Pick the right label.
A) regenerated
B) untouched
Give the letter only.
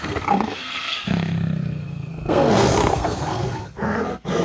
A